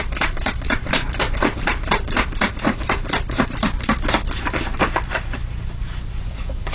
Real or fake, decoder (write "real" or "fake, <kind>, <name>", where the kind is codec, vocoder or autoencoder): fake, vocoder, BigVGAN v2